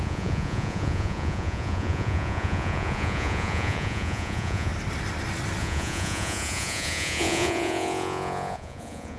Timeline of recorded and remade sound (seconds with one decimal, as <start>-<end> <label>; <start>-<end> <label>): 0.0-4.7 remade; 4.7-5.6 recorded; 5.6-9.2 remade